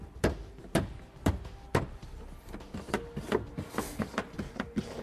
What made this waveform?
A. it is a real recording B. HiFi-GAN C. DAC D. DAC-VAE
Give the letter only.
A